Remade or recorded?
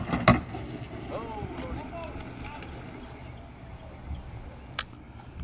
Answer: recorded